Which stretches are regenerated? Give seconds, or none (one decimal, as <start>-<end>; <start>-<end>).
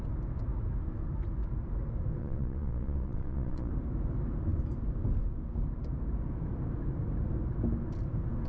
2.2-3.7